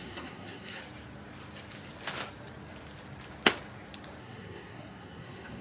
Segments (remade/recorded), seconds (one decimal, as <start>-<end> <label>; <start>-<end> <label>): 0.0-0.8 remade; 0.8-4.2 recorded; 4.2-5.6 remade